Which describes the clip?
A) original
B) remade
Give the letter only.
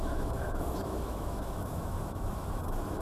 B